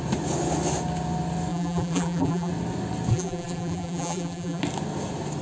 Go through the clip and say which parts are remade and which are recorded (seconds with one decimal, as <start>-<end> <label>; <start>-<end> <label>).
0.0-1.5 recorded; 1.5-2.5 remade; 2.5-3.1 recorded; 3.1-4.6 remade; 4.6-5.4 recorded

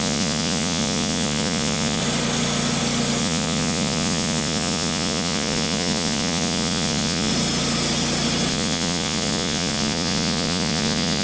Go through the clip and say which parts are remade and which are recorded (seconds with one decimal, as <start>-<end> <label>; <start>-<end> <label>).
0.0-2.0 remade; 2.0-3.2 recorded; 3.2-7.3 remade; 7.3-8.5 recorded; 8.5-11.2 remade

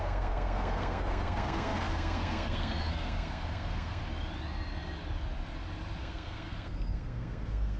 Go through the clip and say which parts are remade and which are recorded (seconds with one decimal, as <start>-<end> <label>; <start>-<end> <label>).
0.0-4.0 remade; 4.0-6.0 recorded; 6.0-7.8 remade

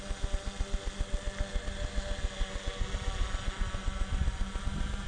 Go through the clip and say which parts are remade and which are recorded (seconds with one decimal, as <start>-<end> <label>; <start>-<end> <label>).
0.0-5.1 recorded

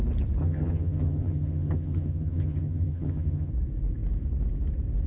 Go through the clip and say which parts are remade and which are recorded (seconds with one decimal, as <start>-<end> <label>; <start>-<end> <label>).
0.0-0.4 recorded; 0.4-3.5 remade; 3.5-5.1 recorded

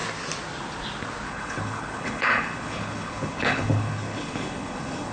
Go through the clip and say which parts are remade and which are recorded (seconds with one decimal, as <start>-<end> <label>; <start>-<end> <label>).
0.0-1.3 recorded; 1.3-5.1 remade

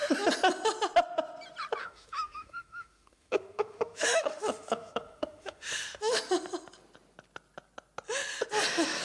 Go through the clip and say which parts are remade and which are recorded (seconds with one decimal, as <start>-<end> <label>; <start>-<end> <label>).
0.0-1.8 recorded; 1.8-6.2 remade; 6.2-9.0 recorded

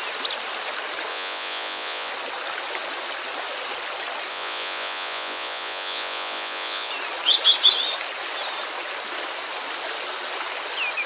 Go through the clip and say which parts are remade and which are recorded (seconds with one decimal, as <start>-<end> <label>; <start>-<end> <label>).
0.0-1.1 recorded; 1.1-2.1 remade; 2.1-4.3 recorded; 4.3-6.9 remade; 6.9-11.1 recorded